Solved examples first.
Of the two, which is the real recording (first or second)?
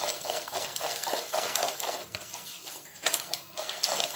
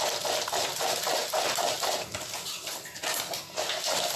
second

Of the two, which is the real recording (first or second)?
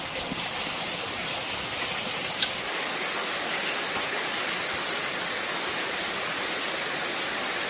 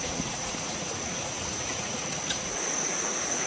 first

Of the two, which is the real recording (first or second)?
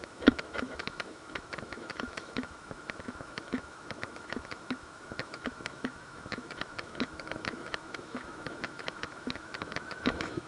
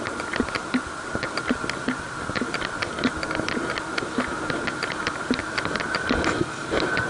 second